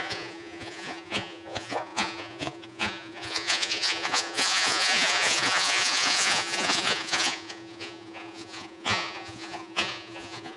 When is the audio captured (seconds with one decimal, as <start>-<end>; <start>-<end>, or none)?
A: none